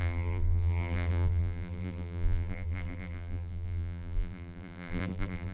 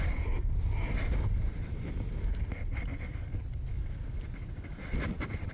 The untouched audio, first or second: second